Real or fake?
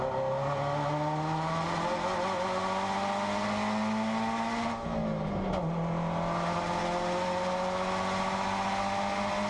real